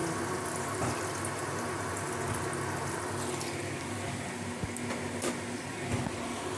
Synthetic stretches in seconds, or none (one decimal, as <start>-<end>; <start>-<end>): none